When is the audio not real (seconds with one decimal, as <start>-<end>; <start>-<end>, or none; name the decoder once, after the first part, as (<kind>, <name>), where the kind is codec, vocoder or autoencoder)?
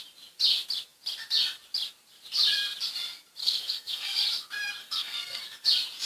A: 3.4-4.2 (codec, SNAC); 4.8-5.4